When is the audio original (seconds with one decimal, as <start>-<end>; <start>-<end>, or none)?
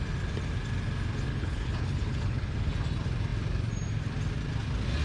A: 0.0-1.3; 2.7-5.0